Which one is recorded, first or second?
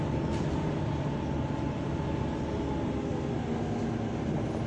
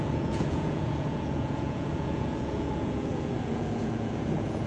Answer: first